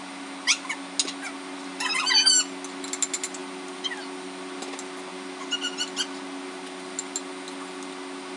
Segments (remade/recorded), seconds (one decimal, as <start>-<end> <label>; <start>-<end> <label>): 0.0-8.4 recorded